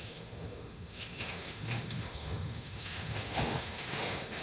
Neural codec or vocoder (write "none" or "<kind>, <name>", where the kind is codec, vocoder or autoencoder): autoencoder, DAC-VAE